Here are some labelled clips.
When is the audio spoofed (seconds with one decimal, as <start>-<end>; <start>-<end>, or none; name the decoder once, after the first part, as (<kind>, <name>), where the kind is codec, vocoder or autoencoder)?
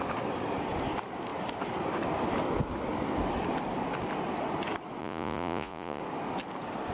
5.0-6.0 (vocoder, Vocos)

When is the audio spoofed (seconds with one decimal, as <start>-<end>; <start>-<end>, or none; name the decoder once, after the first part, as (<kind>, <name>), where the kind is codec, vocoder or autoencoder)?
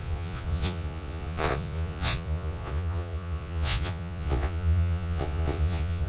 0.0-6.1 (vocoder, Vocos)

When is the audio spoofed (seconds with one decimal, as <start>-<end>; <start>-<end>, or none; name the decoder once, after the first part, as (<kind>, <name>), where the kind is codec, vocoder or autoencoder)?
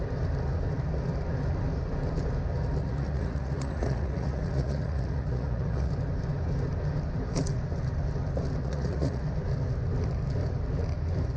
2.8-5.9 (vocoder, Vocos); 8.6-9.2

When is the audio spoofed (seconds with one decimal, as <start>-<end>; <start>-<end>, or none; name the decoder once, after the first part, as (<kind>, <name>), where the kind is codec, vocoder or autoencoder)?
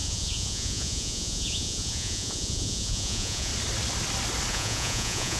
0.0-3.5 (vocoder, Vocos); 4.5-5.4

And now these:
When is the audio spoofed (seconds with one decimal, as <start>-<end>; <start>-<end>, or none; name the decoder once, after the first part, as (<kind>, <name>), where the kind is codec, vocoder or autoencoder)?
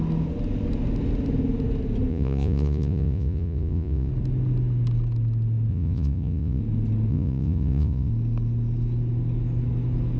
2.1-4.1 (vocoder, Vocos); 5.7-6.6; 7.1-8.1